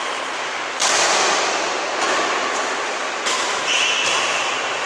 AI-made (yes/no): no